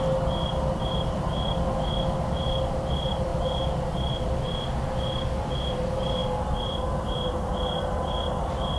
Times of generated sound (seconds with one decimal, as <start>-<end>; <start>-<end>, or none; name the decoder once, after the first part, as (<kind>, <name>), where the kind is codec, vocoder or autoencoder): none

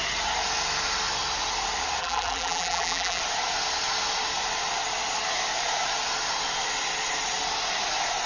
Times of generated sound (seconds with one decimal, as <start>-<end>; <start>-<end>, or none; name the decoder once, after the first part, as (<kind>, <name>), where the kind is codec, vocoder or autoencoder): 2.0-3.2 (vocoder, BigVGAN v2)

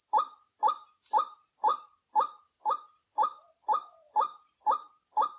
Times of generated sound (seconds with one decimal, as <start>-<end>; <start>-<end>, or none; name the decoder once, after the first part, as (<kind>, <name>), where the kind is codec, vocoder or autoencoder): none

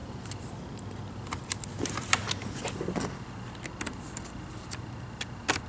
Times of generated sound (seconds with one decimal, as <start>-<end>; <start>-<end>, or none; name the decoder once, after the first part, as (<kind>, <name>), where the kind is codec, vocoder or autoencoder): none